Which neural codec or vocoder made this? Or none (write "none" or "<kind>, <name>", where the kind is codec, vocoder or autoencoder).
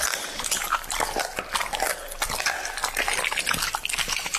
none